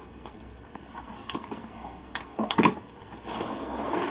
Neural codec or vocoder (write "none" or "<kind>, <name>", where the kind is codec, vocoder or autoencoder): codec, SNAC